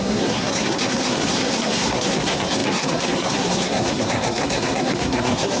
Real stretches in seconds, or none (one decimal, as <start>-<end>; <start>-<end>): none